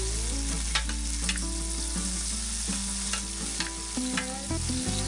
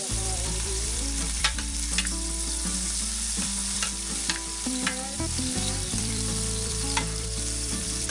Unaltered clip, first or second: first